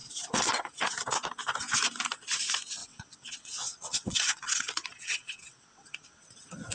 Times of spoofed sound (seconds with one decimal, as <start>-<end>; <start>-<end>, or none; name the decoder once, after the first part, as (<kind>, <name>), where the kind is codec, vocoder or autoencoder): 0.0-0.8 (vocoder, WaveNeXt); 2.8-6.2